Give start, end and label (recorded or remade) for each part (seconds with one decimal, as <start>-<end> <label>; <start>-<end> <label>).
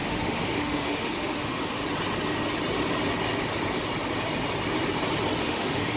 0.0-1.8 remade; 1.8-5.4 recorded; 5.4-6.0 remade